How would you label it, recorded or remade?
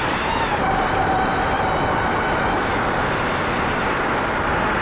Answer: recorded